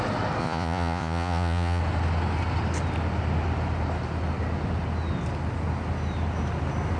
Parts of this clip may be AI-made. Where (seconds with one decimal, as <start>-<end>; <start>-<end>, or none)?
0.4-1.8